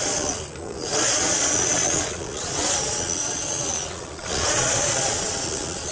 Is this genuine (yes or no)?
no